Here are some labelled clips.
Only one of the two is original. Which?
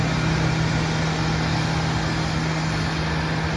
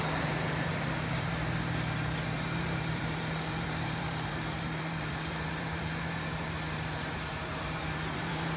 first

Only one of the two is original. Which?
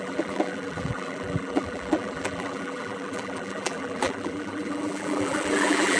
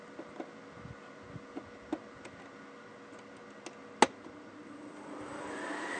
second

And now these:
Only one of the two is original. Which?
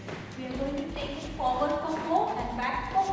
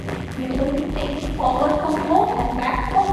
first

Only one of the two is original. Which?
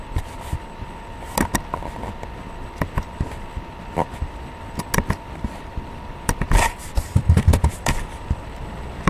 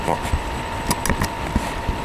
second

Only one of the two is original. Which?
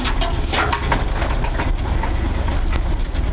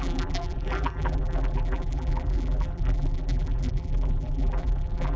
first